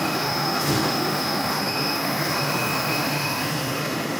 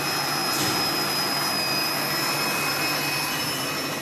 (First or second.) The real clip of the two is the second